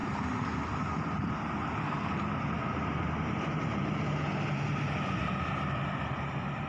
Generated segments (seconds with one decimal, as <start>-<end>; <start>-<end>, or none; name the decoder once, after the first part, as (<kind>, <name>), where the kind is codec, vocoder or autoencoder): 0.0-1.3 (vocoder, BigVGAN v2); 2.6-5.9